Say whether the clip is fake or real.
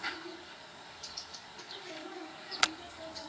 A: fake